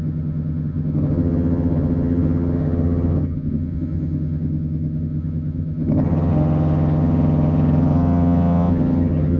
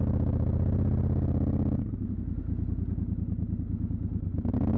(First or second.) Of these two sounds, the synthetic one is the first